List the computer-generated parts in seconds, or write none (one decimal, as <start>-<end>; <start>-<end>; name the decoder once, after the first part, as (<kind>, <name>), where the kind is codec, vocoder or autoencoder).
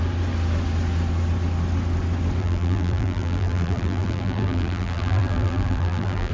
2.4-6.3 (vocoder, BigVGAN v2)